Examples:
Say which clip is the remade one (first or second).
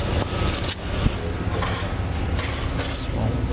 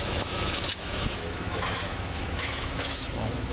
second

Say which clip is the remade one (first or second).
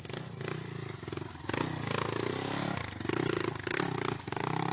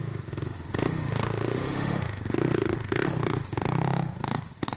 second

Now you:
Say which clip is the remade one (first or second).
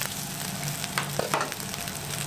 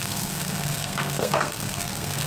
second